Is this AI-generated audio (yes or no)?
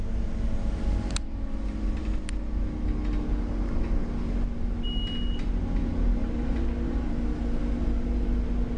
no